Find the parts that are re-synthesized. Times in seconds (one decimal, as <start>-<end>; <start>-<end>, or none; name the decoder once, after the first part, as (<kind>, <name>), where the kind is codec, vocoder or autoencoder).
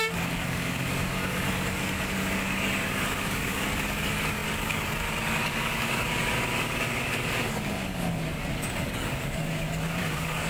0.0-10.5 (codec, DAC)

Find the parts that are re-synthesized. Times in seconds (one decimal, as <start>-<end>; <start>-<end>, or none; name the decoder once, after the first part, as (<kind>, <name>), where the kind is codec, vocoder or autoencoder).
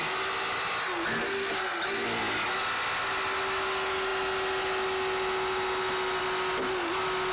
none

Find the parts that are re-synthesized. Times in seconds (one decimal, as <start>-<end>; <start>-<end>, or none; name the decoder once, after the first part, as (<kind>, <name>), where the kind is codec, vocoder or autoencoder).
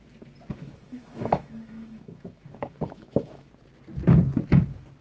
0.5-3.5 (autoencoder, DAC-VAE)